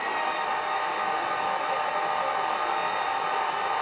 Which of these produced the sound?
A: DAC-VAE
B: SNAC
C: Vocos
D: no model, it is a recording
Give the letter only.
D